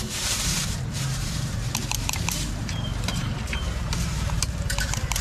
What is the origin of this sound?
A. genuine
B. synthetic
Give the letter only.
B